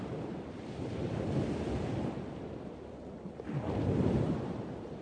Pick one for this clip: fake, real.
real